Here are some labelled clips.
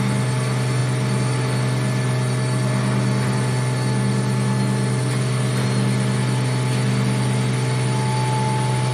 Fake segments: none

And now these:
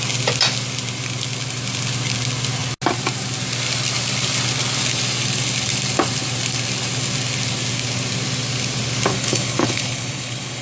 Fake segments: 9.1-10.6 (codec, HILCodec)

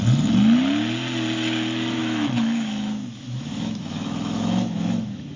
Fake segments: 2.0-5.4 (autoencoder, DAC-VAE)

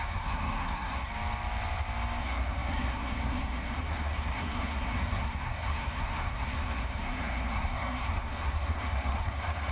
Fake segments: 0.0-1.1 (codec, SNAC); 2.2-9.7

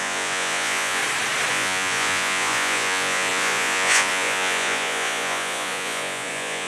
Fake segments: 0.0-1.0 (vocoder, Vocos); 1.5-6.7

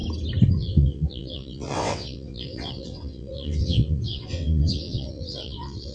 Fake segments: 0.5-5.9 (vocoder, WaveNeXt)

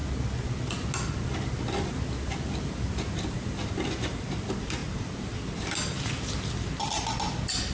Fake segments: none